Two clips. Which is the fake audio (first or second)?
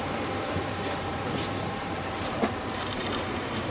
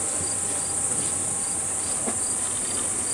first